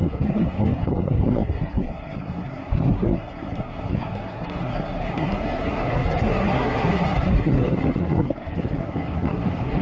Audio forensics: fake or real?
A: fake